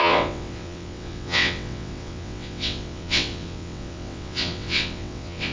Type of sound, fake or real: fake